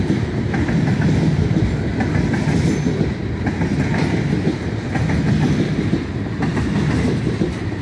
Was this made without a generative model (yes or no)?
yes